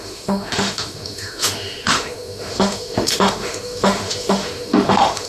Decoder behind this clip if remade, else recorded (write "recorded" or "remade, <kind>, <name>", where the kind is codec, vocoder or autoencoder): remade, autoencoder, DAC-VAE